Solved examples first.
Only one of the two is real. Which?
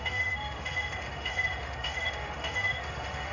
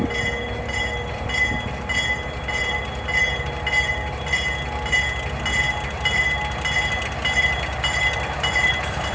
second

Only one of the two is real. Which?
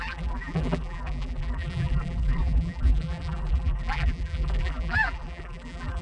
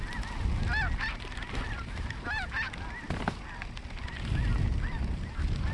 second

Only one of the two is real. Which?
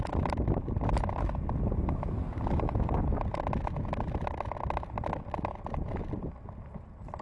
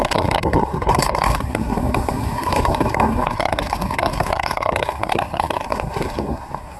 first